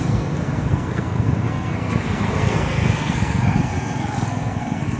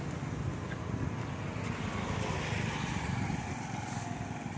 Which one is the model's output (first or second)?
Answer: first